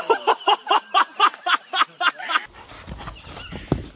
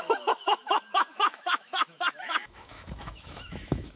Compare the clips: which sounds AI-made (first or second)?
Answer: second